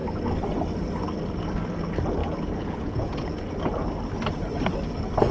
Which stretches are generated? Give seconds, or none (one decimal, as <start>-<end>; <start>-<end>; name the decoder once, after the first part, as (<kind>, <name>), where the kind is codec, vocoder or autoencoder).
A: 2.2-3.6 (vocoder, Vocos)